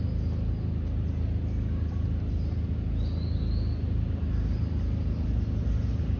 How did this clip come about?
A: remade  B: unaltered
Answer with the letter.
B